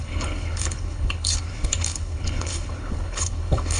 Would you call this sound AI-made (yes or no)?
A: yes